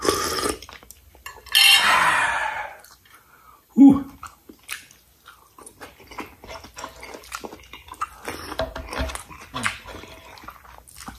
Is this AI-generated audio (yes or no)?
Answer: no